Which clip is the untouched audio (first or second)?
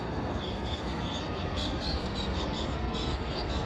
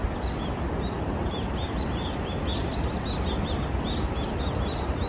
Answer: second